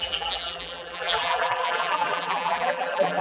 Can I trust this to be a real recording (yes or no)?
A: no